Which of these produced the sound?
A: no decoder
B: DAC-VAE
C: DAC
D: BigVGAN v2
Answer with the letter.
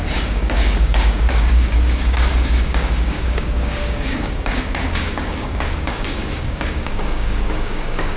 C